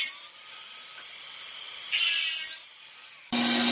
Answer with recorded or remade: recorded